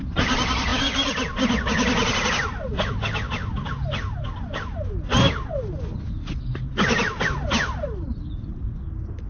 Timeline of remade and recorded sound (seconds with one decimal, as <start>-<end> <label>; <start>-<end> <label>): 0.0-9.3 recorded